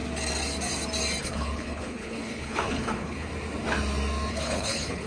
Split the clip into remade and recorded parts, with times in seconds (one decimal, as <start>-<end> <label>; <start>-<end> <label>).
0.0-1.2 recorded; 1.2-3.3 remade; 3.3-4.3 recorded; 4.3-5.1 remade